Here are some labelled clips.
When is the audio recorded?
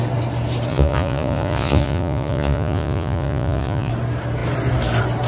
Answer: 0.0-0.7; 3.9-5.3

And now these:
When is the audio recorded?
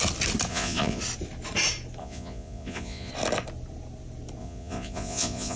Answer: 0.0-0.5; 1.0-2.0; 3.1-4.4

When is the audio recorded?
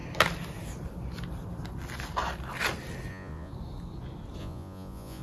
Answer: 0.0-3.1; 3.5-4.4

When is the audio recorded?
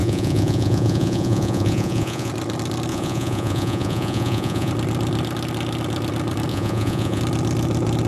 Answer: 2.3-2.9; 4.7-6.5; 7.2-8.1